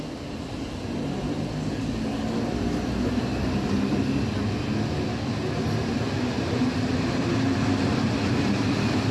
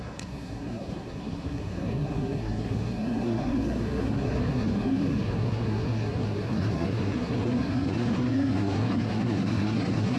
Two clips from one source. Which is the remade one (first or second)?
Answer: second